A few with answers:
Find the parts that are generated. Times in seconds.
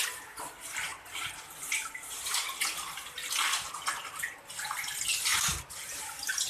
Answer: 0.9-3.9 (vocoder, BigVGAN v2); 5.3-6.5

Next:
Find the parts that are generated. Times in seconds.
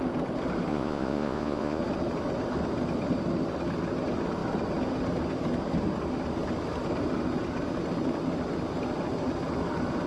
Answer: 0.7-1.8 (vocoder, Vocos)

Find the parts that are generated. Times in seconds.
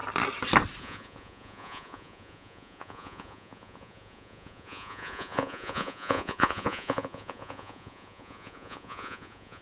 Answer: 0.8-9.6 (vocoder, Vocos)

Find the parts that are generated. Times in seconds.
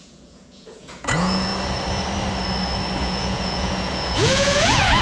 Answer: 0.0-1.5 (vocoder, Vocos); 3.0-5.0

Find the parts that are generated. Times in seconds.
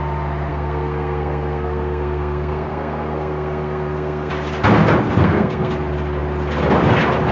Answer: 0.5-4.3 (codec, SNAC); 5.2-5.7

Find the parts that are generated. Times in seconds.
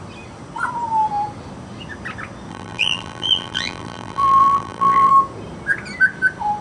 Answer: 2.5-5.1 (vocoder, BigVGAN v2)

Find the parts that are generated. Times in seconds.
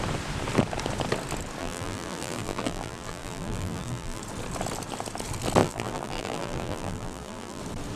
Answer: 1.6-4.2 (vocoder, BigVGAN v2); 5.6-7.6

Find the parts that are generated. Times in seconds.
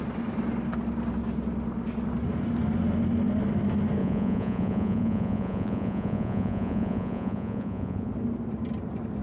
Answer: 4.0-8.1 (vocoder, Vocos)